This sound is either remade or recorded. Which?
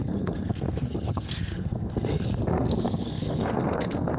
remade